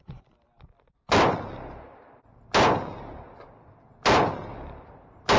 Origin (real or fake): real